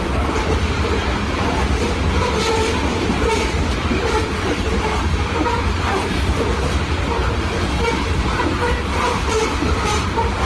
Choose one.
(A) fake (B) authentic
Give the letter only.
B